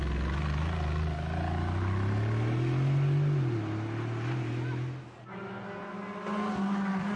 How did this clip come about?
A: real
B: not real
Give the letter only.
A